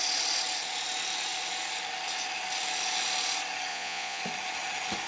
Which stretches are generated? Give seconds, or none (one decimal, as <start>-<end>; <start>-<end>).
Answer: 3.7-4.2